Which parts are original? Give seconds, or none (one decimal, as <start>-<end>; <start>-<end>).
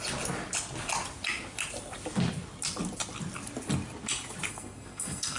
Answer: 0.0-4.5